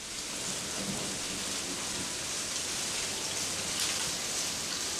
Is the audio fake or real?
real